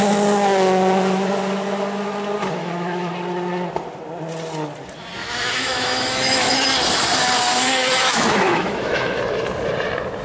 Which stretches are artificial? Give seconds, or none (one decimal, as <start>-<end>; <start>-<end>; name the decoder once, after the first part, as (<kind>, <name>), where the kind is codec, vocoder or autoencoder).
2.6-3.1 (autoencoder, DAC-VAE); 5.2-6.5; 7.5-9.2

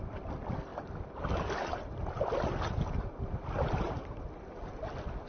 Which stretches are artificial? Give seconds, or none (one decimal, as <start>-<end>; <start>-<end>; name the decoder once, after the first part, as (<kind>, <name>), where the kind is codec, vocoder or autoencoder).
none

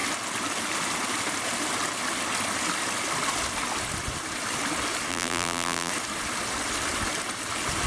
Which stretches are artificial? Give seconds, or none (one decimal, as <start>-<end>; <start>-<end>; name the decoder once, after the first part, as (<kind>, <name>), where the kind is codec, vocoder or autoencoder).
5.1-5.9 (vocoder, BigVGAN v2)

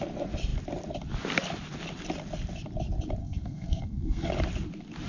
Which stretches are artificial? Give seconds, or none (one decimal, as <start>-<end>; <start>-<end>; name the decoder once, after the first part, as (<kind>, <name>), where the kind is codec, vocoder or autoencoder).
3.2-4.3 (codec, SNAC)